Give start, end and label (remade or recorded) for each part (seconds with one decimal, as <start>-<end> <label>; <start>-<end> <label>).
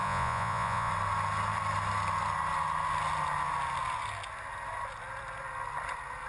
0.0-0.9 remade; 0.9-6.3 recorded